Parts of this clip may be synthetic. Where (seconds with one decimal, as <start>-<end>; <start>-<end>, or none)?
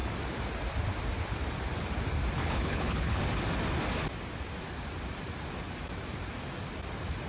2.4-3.2